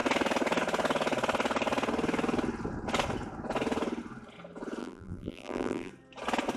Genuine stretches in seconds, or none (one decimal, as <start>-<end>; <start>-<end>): 0.0-4.8; 5.9-6.6

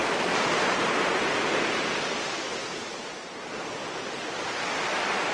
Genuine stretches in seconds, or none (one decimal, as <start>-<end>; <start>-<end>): 0.0-5.3

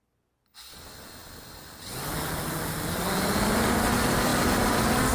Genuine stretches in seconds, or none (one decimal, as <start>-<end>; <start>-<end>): 0.0-5.1

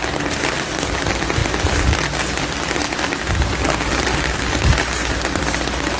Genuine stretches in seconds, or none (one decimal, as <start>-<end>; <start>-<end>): 0.0-6.0

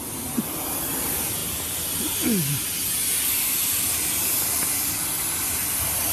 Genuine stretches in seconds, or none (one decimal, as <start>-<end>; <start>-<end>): 1.4-3.9